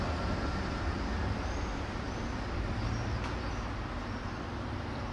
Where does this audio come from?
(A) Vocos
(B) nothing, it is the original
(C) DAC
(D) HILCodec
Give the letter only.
B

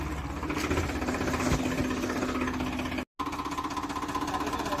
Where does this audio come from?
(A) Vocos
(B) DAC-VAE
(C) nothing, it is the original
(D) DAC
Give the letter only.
C